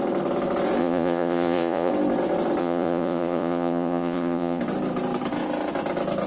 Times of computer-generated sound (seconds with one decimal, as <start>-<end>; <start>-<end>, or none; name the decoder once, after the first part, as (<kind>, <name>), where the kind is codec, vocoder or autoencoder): 0.8-1.9 (vocoder, Vocos); 2.6-4.6